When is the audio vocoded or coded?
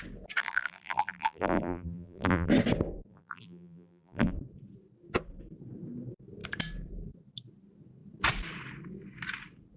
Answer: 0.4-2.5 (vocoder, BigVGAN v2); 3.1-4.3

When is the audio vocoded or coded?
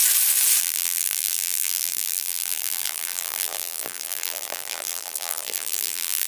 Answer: 0.6-6.3 (vocoder, BigVGAN v2)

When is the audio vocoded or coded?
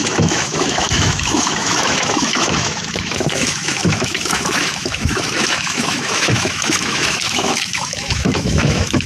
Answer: 0.0-9.1 (autoencoder, DAC-VAE)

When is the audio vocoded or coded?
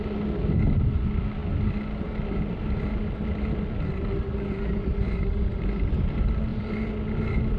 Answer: none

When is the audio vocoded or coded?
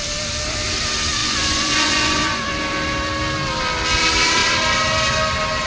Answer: 1.2-2.5 (vocoder, Vocos)